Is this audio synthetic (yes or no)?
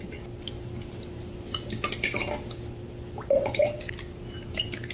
no